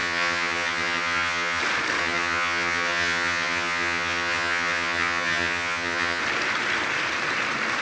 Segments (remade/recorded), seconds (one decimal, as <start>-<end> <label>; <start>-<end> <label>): 0.0-1.6 remade; 1.6-2.0 recorded; 2.0-6.2 remade; 6.2-7.8 recorded